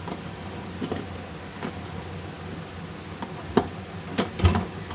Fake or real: real